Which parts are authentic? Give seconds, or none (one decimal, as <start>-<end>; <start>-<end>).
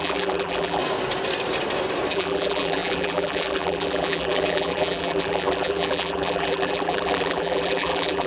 0.8-2.1